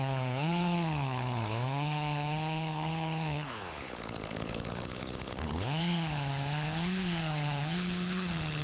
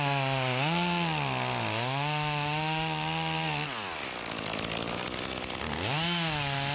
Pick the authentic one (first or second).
second